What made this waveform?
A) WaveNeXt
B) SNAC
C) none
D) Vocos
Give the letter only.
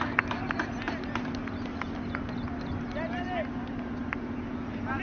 C